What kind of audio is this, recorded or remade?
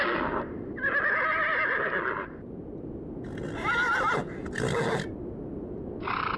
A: recorded